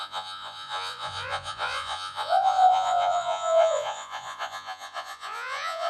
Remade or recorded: remade